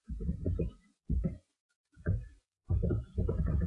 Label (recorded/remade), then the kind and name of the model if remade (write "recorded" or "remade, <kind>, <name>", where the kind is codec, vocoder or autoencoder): remade, vocoder, Vocos